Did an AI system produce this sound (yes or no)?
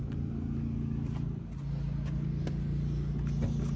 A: no